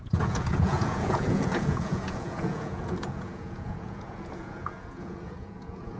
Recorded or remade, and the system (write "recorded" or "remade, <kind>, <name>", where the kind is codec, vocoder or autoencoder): remade, vocoder, Vocos